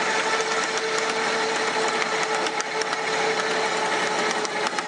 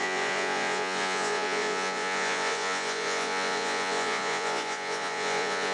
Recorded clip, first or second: first